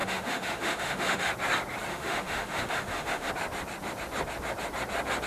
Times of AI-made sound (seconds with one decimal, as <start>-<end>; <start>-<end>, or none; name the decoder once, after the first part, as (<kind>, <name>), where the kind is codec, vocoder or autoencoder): 0.0-1.3 (autoencoder, DAC-VAE); 1.9-3.3

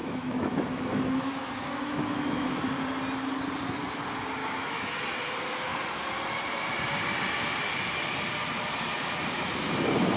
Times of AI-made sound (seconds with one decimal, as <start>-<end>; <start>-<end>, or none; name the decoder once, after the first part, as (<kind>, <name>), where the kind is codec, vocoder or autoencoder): 0.0-2.6 (autoencoder, DAC-VAE); 4.4-5.0

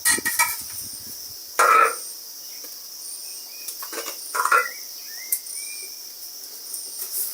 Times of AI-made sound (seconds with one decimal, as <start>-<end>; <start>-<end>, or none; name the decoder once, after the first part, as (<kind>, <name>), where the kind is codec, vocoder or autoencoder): none

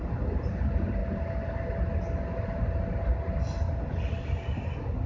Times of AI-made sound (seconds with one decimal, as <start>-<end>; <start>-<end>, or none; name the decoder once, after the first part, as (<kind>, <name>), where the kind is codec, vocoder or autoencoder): none

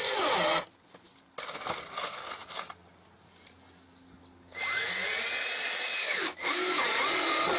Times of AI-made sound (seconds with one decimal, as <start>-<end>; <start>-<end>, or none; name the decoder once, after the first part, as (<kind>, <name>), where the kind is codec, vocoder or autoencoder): 6.0-6.8 (autoencoder, DAC-VAE)